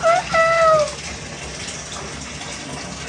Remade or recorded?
recorded